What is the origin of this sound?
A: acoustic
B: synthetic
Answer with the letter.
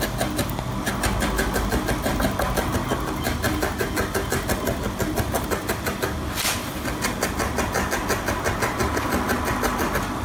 A